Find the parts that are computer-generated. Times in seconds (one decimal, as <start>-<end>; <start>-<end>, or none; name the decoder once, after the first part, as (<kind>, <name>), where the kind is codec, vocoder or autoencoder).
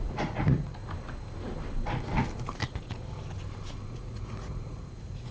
0.0-0.8 (vocoder, Vocos); 3.9-5.3